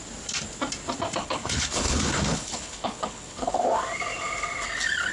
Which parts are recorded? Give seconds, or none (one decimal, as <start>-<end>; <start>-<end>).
0.0-1.2; 3.6-5.1